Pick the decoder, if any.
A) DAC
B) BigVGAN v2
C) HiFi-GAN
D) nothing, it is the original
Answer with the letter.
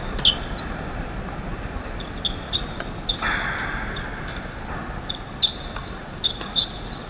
D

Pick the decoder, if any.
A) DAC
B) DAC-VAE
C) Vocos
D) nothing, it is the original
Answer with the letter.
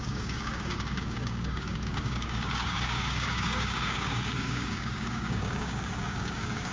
A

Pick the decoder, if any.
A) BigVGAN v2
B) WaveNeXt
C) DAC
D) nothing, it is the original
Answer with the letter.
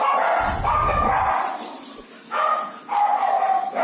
D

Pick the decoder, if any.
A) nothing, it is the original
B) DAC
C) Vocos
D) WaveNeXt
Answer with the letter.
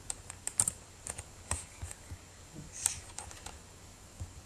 B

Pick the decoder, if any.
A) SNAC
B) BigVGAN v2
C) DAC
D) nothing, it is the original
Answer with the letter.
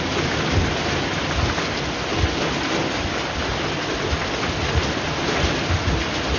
D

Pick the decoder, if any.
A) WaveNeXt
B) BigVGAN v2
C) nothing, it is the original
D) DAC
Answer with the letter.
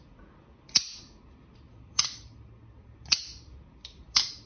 C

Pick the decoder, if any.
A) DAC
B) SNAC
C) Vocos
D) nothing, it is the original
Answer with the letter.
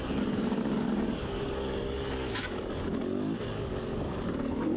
A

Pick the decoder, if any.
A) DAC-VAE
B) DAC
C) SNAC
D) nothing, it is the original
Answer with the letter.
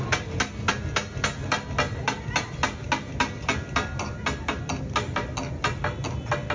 D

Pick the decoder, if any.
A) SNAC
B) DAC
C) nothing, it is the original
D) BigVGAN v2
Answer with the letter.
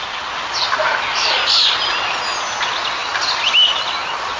C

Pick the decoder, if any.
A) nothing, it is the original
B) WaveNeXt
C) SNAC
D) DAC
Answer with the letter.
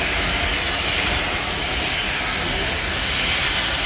A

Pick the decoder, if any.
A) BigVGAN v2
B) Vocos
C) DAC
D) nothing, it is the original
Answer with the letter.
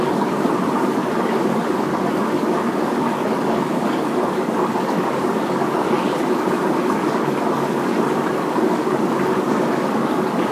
C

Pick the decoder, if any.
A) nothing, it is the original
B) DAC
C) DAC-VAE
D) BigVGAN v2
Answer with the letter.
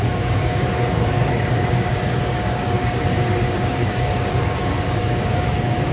B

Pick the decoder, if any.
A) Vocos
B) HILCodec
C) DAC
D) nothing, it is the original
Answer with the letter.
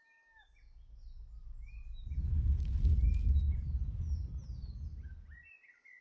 D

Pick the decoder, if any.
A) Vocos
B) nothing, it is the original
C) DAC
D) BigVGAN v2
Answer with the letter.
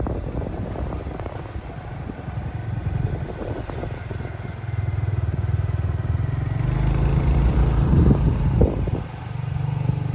B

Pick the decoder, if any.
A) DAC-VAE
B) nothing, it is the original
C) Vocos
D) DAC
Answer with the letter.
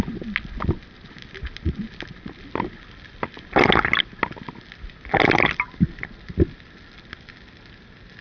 B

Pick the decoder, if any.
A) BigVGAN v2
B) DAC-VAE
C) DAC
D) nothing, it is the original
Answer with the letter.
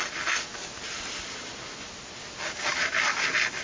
D